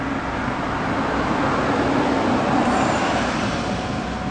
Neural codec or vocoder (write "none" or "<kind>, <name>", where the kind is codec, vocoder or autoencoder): none